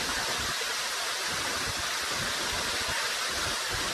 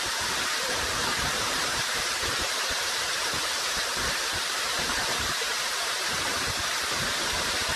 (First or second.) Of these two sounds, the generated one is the second